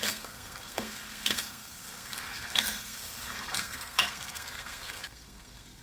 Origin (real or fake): fake